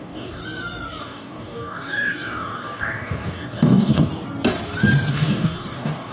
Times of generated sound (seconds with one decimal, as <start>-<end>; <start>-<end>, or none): 0.0-0.4; 1.0-4.1; 5.1-6.1